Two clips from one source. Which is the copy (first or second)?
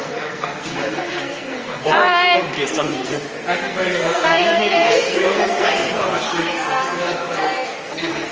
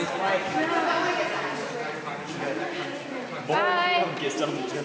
first